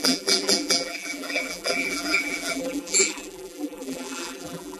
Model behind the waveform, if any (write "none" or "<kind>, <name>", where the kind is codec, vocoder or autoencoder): vocoder, BigVGAN v2